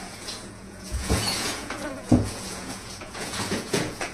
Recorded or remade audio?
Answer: remade